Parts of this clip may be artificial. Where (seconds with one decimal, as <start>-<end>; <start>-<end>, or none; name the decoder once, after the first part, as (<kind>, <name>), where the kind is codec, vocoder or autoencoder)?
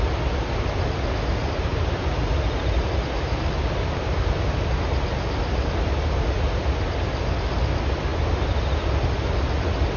none